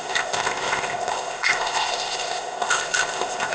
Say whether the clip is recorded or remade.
remade